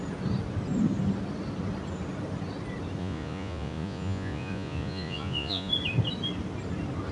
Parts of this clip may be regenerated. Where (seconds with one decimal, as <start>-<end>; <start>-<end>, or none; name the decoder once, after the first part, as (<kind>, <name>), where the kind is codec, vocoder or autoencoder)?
3.0-5.7 (vocoder, Vocos)